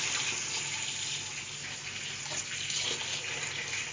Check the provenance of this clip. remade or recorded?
recorded